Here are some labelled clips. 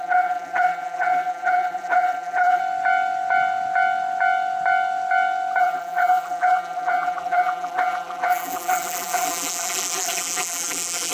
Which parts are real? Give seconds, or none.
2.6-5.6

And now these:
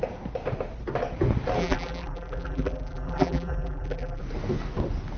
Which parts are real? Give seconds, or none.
0.0-1.6; 4.2-5.2

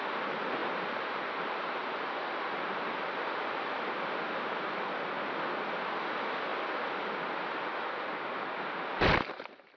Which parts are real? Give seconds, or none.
0.0-0.6; 3.0-9.8

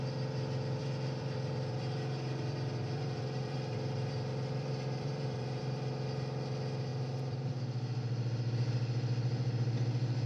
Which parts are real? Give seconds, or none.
0.0-0.8; 5.6-6.9; 7.5-10.3